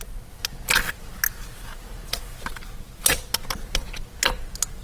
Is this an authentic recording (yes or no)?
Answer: yes